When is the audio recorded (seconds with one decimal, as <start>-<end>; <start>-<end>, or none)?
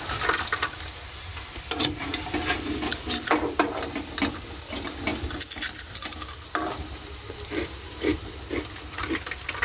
1.3-2.6; 8.1-9.0